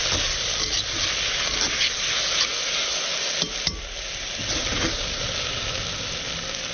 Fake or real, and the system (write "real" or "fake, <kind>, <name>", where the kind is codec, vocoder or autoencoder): real